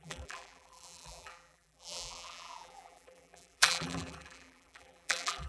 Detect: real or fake fake